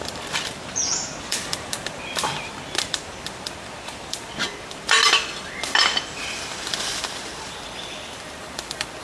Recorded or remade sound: remade